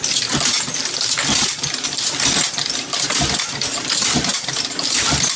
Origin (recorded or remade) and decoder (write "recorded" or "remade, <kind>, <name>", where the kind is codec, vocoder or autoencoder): recorded